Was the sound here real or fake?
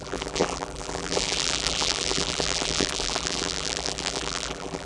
fake